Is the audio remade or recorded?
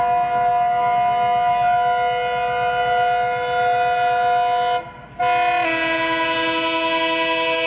recorded